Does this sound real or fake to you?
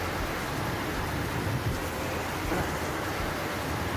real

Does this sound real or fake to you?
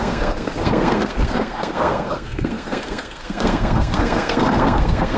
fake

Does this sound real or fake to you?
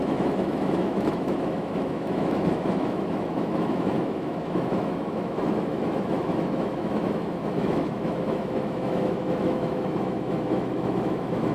fake